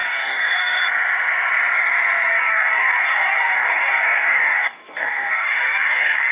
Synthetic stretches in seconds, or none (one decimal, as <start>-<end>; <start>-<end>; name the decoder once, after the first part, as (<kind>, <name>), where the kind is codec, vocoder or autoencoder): 0.0-0.8 (codec, DAC); 2.3-6.3